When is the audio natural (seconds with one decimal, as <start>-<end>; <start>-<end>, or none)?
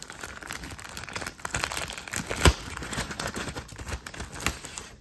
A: 0.0-2.8; 3.7-5.0